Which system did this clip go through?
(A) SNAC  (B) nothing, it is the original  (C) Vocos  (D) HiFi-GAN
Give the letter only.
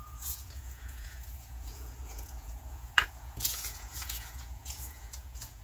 C